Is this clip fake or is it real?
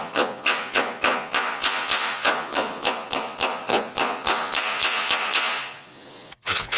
fake